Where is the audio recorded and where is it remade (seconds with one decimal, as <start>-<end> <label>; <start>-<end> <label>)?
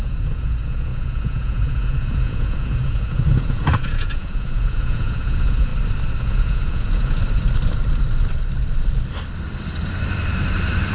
0.0-5.7 remade; 5.7-6.2 recorded; 6.2-7.2 remade; 7.2-10.9 recorded